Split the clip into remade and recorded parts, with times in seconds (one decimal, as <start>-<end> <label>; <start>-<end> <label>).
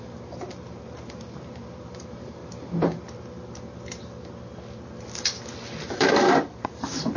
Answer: 0.0-2.4 remade; 2.4-5.9 recorded; 5.9-7.2 remade